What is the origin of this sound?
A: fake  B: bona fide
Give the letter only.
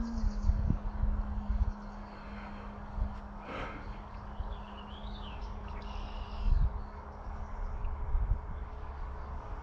A